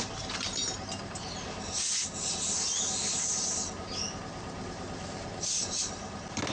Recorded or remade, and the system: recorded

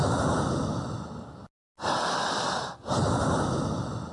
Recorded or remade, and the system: recorded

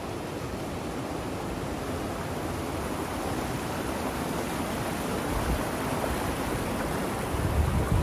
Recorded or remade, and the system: recorded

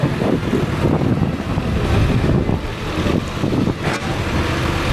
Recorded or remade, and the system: recorded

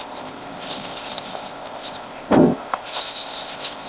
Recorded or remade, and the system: remade, codec, ZipCodec